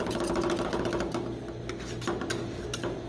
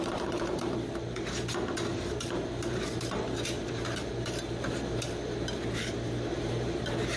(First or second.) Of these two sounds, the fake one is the second